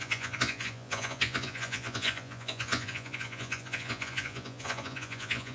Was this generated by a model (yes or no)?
yes